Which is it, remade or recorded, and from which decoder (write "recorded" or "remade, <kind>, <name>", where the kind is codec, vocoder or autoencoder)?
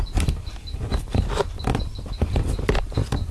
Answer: recorded